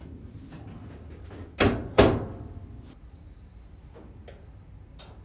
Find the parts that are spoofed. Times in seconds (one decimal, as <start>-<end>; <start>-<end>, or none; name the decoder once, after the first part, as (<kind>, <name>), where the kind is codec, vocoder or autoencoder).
none